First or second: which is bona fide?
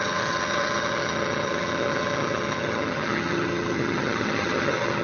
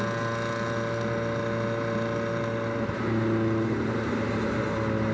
second